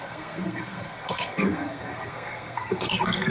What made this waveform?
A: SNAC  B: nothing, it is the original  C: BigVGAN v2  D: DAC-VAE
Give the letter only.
A